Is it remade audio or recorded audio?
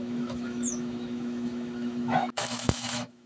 remade